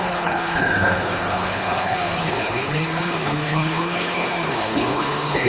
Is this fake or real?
fake